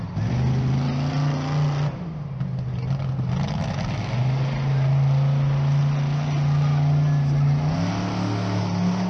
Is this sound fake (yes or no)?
no